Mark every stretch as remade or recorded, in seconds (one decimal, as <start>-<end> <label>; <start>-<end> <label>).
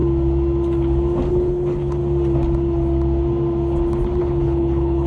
0.0-1.3 recorded; 1.3-2.0 remade; 2.0-4.2 recorded; 4.2-5.1 remade